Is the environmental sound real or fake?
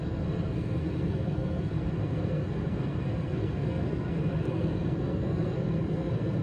fake